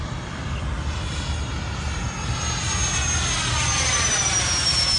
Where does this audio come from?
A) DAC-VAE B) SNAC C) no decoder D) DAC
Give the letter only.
C